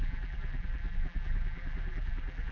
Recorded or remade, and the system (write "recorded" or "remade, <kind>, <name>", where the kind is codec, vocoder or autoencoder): remade, vocoder, BigVGAN v2